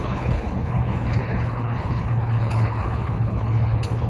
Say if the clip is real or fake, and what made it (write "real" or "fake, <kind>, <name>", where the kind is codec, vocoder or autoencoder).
fake, codec, HILCodec